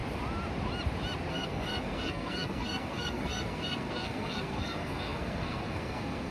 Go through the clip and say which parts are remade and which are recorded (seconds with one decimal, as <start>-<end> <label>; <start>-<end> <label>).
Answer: 0.0-1.3 recorded; 1.3-6.3 remade